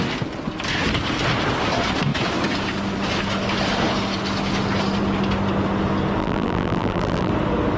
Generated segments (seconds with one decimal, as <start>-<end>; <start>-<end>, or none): 6.2-7.3